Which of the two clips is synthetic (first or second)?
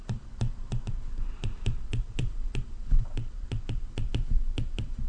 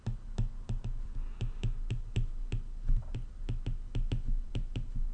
first